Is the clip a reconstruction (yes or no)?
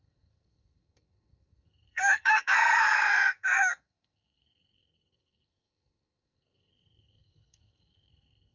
yes